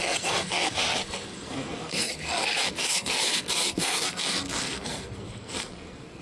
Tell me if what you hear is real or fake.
fake